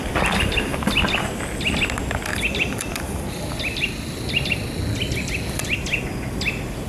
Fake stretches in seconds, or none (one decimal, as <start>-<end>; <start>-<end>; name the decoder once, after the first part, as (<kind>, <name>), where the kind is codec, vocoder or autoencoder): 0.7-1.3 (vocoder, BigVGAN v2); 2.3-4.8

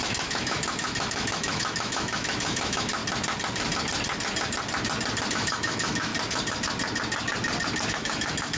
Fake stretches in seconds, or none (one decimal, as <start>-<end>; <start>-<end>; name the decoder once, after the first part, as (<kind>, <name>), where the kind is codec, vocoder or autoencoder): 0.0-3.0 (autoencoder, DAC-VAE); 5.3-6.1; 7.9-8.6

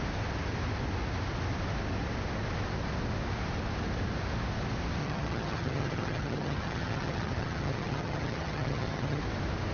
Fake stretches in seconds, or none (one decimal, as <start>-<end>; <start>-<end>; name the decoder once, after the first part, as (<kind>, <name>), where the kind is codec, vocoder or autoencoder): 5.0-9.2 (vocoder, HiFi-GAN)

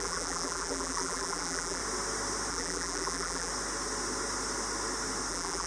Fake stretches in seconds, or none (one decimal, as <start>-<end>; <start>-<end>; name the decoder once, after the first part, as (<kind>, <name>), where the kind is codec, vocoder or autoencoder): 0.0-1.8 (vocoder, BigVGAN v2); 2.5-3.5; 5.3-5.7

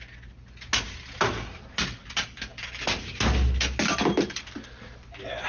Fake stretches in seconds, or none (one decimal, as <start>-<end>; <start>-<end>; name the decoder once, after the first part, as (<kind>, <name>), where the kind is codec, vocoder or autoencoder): none

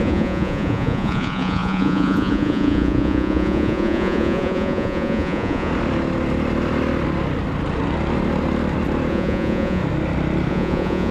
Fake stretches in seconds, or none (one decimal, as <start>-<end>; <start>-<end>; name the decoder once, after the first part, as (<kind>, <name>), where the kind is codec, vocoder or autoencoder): 0.0-5.7 (vocoder, Vocos); 9.1-9.8; 10.5-11.1

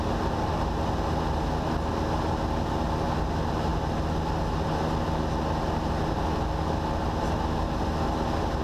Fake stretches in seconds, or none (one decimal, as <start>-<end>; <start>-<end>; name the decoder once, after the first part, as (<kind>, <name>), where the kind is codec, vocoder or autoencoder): none